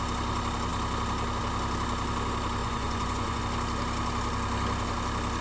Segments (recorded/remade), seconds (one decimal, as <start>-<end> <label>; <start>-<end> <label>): 0.0-2.6 recorded; 2.6-3.4 remade; 3.4-5.4 recorded